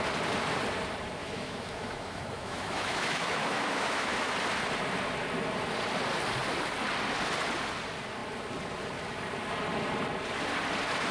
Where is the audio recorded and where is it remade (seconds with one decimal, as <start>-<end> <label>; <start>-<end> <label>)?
0.0-1.2 recorded; 1.2-4.3 remade; 4.3-11.1 recorded